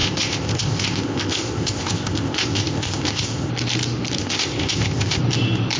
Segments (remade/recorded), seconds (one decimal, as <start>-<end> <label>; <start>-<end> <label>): 0.0-3.5 remade; 3.5-4.2 recorded; 4.2-5.2 remade; 5.2-5.8 recorded